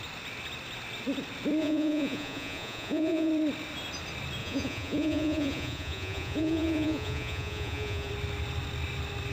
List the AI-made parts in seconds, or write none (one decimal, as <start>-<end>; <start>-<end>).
1.6-3.3; 4.4-8.1